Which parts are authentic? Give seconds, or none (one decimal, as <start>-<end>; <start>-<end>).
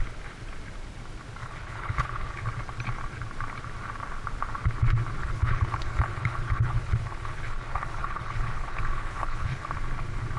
0.0-1.4; 2.5-5.2; 9.7-10.4